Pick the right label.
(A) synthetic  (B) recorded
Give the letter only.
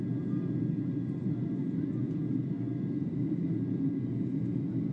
B